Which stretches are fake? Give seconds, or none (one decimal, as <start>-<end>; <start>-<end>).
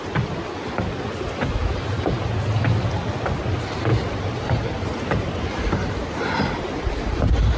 1.6-2.2; 3.9-7.6